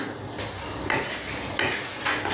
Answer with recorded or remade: recorded